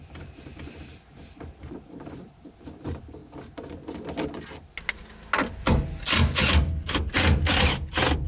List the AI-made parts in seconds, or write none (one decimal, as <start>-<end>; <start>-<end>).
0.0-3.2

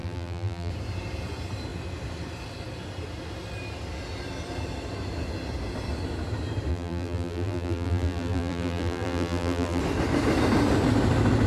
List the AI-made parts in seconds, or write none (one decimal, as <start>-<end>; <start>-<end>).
0.0-0.7; 6.7-9.8

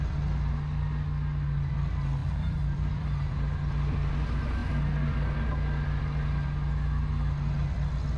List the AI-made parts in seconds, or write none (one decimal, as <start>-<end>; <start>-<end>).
2.2-4.1

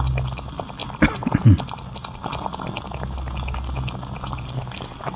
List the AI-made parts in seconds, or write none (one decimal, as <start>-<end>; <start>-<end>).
none

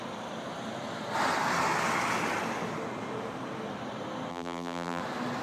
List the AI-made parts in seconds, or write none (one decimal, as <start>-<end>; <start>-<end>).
4.3-5.0

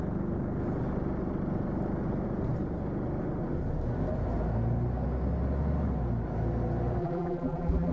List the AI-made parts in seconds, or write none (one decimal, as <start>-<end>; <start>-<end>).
7.0-7.9